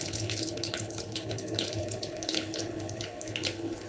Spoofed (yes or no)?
yes